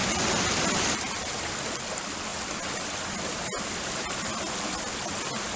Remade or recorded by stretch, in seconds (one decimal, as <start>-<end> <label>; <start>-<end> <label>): 0.0-1.3 remade; 1.3-5.6 recorded